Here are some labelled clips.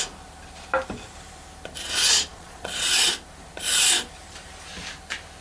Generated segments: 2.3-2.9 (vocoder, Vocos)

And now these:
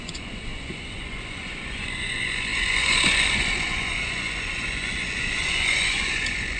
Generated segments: 0.0-6.6 (vocoder, Vocos)

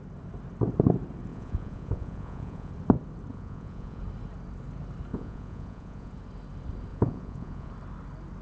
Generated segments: 1.3-2.7 (vocoder, Vocos); 3.3-4.0; 5.1-6.1; 6.9-7.7